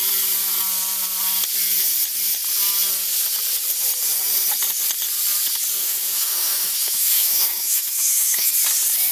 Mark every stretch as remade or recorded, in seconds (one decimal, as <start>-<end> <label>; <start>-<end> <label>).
0.0-5.8 recorded; 5.8-8.5 remade; 8.5-9.1 recorded